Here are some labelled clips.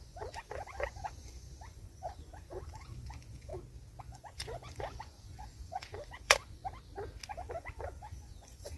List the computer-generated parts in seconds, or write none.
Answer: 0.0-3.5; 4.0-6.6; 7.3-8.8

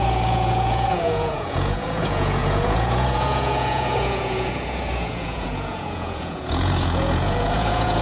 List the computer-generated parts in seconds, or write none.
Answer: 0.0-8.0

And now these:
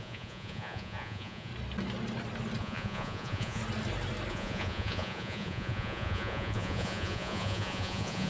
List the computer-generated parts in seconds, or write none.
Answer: 0.0-1.5; 2.6-3.6; 4.3-8.3

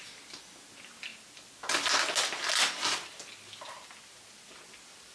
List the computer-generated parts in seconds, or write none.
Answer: none

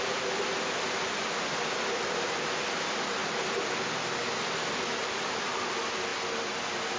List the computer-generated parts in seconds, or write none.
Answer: none

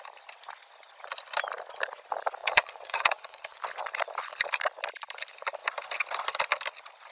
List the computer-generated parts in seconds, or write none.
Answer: 2.4-3.6